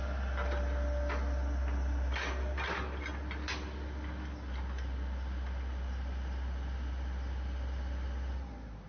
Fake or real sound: real